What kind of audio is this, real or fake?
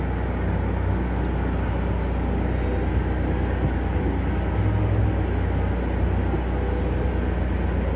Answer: real